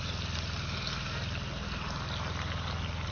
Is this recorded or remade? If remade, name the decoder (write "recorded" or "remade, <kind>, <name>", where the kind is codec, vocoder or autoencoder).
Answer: recorded